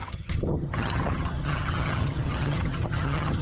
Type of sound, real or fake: fake